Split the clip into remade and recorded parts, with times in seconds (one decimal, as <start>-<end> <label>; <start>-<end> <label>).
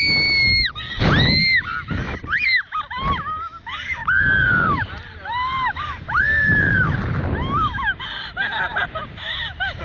0.0-4.0 recorded; 4.0-7.2 remade; 7.2-9.8 recorded